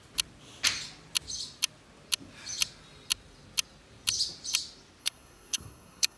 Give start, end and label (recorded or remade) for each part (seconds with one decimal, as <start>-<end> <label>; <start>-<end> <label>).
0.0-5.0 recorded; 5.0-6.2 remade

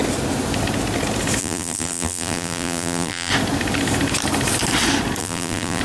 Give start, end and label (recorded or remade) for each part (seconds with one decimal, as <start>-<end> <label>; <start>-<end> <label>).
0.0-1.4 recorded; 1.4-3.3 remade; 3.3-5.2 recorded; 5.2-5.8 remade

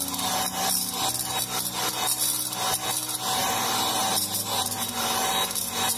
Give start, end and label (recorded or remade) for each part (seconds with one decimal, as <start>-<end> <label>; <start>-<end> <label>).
0.0-3.4 recorded; 3.4-5.3 remade; 5.3-6.0 recorded